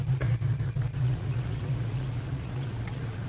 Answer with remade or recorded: remade